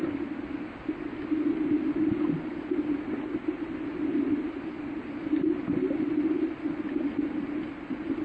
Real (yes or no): yes